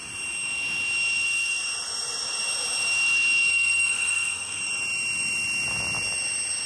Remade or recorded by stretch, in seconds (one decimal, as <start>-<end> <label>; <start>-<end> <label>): 0.0-3.5 recorded; 3.5-4.6 remade; 4.6-6.7 recorded